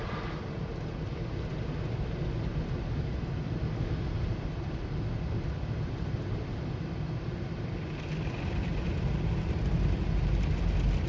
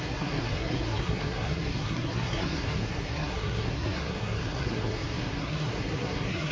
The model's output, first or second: second